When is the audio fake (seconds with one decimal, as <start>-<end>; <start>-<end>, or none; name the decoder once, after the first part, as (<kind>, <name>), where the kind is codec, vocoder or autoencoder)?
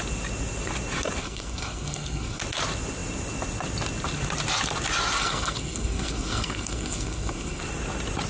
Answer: 1.2-2.4 (codec, SNAC); 5.2-7.6